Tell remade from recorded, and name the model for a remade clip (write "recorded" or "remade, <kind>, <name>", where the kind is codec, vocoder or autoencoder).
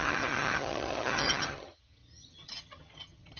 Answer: remade, vocoder, HiFi-GAN